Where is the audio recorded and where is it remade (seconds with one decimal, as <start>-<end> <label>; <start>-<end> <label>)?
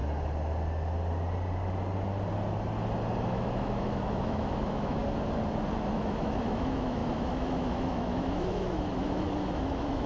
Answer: 0.0-3.3 recorded; 3.3-5.0 remade; 5.0-5.9 recorded; 5.9-10.1 remade